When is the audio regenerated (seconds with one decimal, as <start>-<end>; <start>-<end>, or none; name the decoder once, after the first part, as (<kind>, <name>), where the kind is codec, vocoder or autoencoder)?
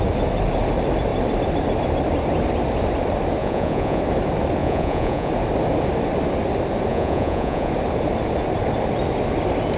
3.4-4.0 (vocoder, Vocos); 4.6-5.3; 6.9-7.7